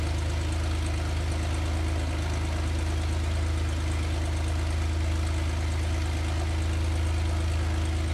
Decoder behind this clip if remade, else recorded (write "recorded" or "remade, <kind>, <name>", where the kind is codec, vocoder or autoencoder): recorded